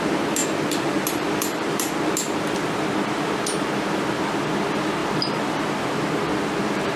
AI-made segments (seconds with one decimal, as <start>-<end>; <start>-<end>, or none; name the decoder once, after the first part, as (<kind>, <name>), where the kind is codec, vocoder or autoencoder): none